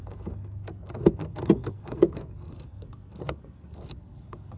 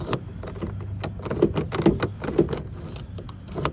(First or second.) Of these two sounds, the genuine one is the second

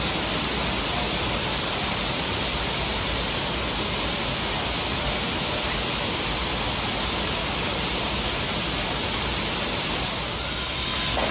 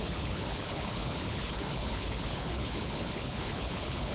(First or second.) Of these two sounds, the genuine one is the first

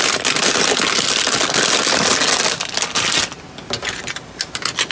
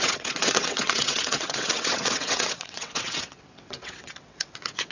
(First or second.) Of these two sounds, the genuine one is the first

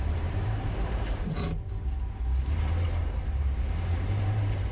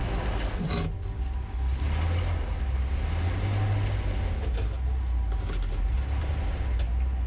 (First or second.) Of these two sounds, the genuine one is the second